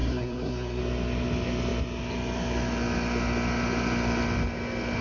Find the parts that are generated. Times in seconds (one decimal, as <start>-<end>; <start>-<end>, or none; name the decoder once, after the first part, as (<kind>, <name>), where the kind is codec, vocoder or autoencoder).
0.0-0.8 (codec, SNAC)